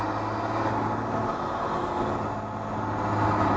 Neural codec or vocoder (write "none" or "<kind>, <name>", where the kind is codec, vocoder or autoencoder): none